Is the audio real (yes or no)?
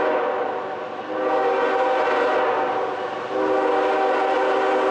yes